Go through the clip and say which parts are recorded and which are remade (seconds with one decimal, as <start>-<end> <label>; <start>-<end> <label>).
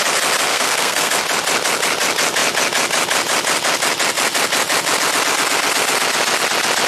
0.0-0.5 recorded; 0.5-1.1 remade; 1.1-6.9 recorded